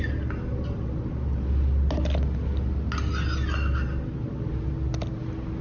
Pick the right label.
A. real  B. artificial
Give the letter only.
A